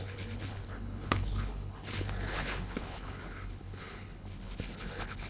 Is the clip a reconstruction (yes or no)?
yes